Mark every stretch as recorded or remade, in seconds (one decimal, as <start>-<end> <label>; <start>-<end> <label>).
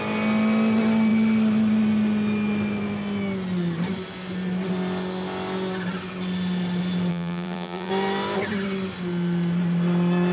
0.0-7.1 recorded; 7.1-7.9 remade; 7.9-10.3 recorded